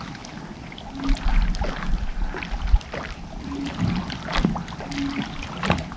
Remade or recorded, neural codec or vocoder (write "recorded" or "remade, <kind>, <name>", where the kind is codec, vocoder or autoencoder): recorded